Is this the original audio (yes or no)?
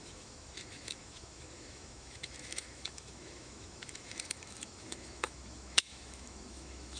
no